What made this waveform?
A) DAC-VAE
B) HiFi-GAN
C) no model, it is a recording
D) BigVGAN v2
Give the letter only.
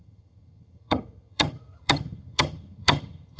B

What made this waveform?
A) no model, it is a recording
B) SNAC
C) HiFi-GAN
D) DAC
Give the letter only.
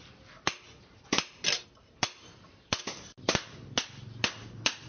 A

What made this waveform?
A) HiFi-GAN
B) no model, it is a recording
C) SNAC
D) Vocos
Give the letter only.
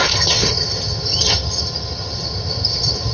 A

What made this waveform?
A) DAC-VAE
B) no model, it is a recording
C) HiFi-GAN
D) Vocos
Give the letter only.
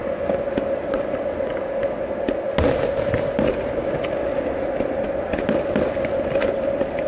B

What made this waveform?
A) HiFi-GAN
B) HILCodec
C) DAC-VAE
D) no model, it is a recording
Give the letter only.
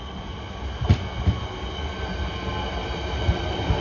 D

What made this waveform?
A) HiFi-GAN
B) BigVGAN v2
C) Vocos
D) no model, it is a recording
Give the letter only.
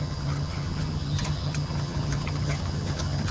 A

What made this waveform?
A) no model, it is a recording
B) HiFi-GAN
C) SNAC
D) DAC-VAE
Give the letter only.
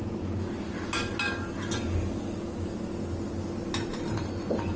A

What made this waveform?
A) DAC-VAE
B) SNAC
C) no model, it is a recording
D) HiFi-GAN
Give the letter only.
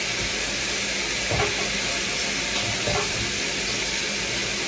C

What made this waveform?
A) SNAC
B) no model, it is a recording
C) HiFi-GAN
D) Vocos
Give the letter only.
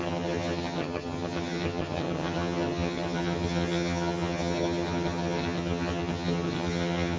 C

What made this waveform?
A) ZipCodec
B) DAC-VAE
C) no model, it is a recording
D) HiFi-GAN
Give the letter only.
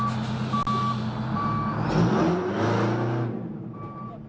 C